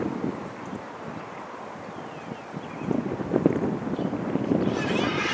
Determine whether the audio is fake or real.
real